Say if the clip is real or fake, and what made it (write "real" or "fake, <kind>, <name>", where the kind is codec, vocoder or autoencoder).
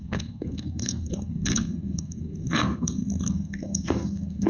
fake, codec, SNAC